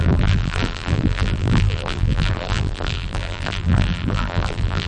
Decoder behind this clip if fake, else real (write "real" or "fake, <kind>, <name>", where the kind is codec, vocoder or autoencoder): fake, vocoder, BigVGAN v2